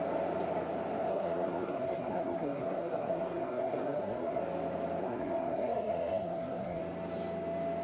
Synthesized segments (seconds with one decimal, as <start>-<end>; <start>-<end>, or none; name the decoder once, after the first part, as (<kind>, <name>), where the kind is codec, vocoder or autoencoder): 1.1-4.4 (codec, SNAC); 5.0-6.8